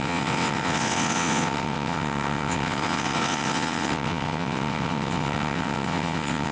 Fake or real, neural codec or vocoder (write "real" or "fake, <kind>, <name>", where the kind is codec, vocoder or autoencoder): fake, vocoder, WaveNeXt